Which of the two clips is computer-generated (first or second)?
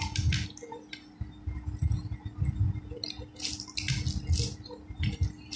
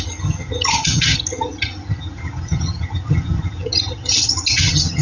second